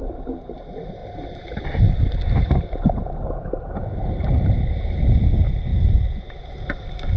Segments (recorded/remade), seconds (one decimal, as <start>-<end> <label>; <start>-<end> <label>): 0.0-5.7 recorded; 5.7-6.4 remade; 6.4-7.2 recorded